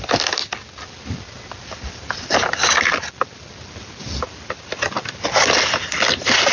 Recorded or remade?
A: recorded